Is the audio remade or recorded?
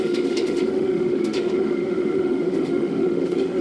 remade